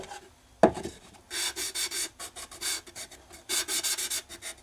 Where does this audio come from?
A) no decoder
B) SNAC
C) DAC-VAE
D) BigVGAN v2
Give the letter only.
A